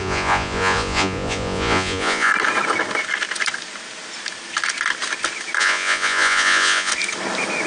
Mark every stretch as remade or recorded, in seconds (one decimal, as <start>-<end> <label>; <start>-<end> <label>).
0.0-2.3 remade; 2.3-5.6 recorded; 5.6-6.9 remade; 6.9-7.7 recorded